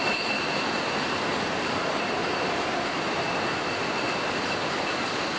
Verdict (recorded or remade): remade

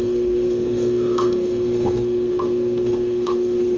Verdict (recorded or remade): remade